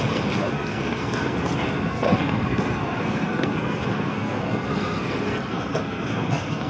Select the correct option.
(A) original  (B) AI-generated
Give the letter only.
B